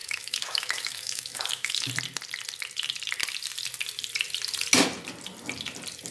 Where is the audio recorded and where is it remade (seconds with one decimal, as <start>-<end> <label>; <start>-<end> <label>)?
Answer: 0.0-1.9 remade; 1.9-6.1 recorded